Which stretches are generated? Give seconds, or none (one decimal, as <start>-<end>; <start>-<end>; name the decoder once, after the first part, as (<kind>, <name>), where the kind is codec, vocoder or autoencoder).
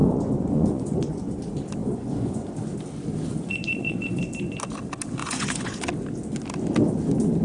0.0-1.4 (vocoder, Vocos); 1.8-2.5; 3.3-4.2; 5.2-5.8